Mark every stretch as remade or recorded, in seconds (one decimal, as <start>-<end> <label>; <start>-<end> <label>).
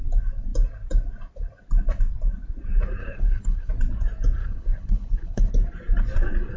0.0-3.0 recorded; 3.0-3.7 remade; 3.7-4.4 recorded; 4.4-5.5 remade; 5.5-6.6 recorded